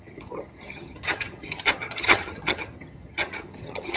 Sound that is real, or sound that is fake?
fake